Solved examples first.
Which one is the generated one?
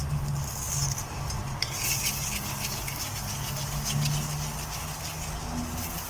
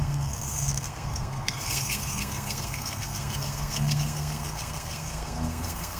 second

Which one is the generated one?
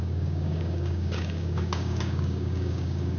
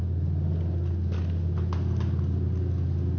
first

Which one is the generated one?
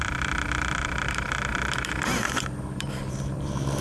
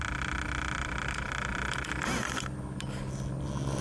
first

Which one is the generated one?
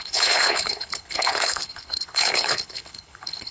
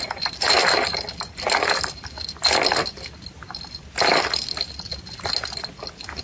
first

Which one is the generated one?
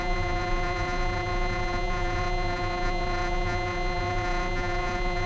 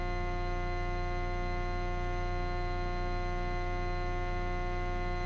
first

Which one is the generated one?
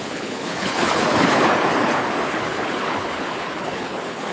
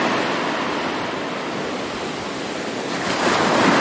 first